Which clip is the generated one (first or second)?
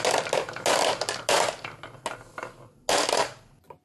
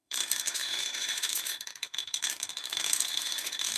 second